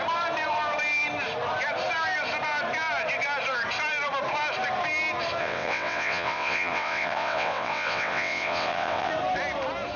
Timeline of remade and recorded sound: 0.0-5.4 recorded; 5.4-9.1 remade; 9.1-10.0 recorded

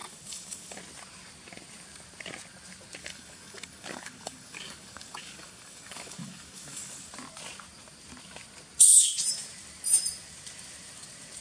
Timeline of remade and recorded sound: 0.0-0.8 remade; 0.8-3.0 recorded; 3.0-7.1 remade; 7.1-11.4 recorded

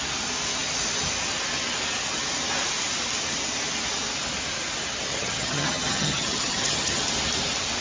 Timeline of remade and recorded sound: 0.0-5.1 recorded; 5.1-7.0 remade; 7.0-7.8 recorded

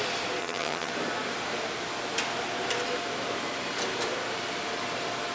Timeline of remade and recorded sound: 0.0-0.4 recorded; 0.4-0.9 remade; 0.9-5.3 recorded

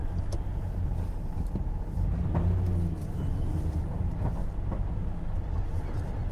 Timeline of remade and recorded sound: 0.0-6.3 recorded

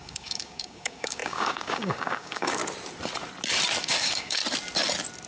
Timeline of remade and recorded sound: 0.0-2.6 remade; 2.6-3.8 recorded; 3.8-4.4 remade; 4.4-5.3 recorded